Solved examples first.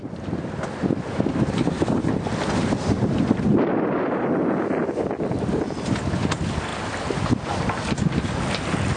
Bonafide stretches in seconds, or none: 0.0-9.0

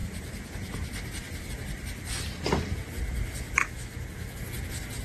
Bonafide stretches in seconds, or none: 0.0-3.6; 4.4-5.0

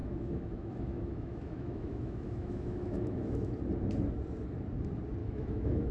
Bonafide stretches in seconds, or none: 3.5-5.2